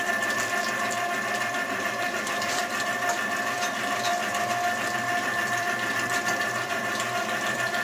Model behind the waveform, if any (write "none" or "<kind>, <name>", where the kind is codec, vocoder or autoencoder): vocoder, BigVGAN v2